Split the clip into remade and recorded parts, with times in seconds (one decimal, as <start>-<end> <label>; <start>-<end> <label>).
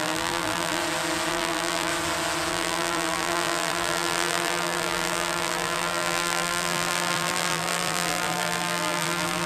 0.0-0.8 remade; 0.8-1.3 recorded; 1.3-1.9 remade; 1.9-2.5 recorded; 2.5-9.5 remade